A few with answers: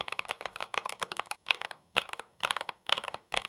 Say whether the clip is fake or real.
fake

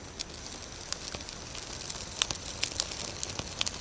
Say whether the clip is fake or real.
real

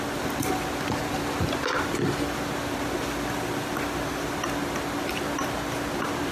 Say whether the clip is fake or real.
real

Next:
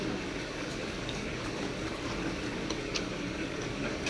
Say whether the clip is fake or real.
fake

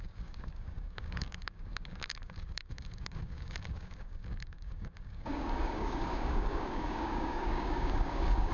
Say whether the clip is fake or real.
fake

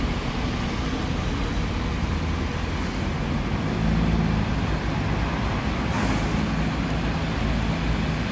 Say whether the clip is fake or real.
real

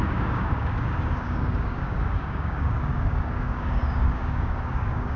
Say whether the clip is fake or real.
fake